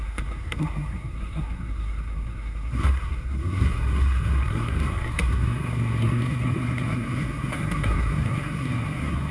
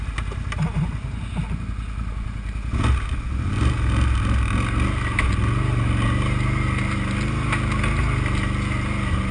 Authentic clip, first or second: second